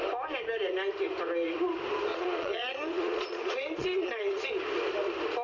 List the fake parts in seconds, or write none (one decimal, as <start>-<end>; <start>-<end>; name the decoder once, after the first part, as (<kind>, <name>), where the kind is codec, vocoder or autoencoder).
2.1-4.5 (vocoder, Vocos)